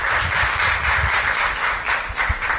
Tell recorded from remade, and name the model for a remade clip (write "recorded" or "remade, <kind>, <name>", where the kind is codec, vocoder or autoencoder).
remade, vocoder, BigVGAN v2